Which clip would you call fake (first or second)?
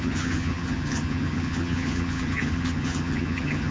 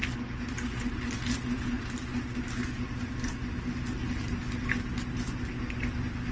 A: first